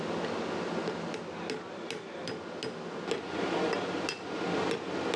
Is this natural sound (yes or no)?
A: yes